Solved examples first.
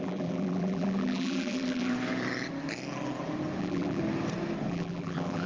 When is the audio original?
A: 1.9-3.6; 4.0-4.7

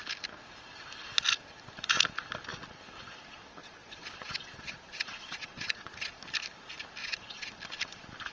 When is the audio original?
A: 0.0-3.6; 6.2-7.0; 7.5-8.3

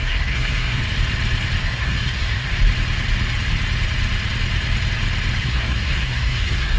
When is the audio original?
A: 0.8-1.6; 2.5-5.4

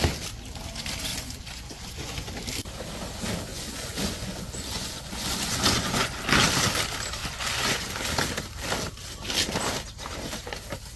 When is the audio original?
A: 0.0-1.1; 2.3-3.5; 6.2-7.2; 7.9-11.0

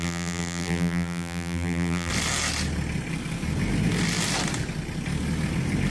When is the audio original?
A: 2.1-5.9

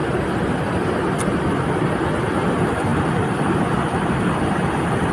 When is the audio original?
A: 0.0-2.9

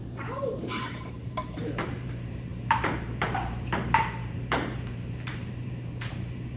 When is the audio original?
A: 0.0-0.5